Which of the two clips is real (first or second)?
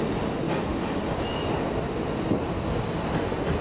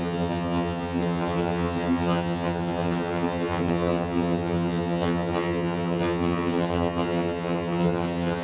first